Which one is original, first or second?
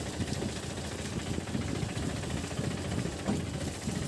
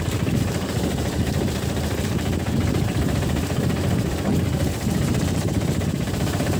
first